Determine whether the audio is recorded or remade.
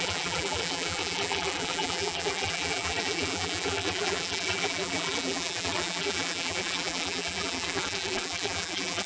remade